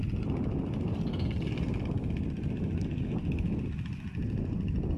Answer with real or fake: real